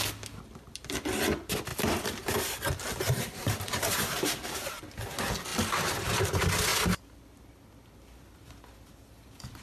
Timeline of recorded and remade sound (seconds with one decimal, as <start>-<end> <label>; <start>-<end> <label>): 0.0-2.9 recorded; 2.9-4.8 remade; 4.8-9.6 recorded